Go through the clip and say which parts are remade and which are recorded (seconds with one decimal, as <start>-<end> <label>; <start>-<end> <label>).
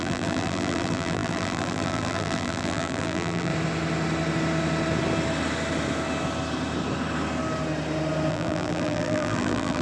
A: 0.0-3.5 remade; 3.5-8.3 recorded; 8.3-9.8 remade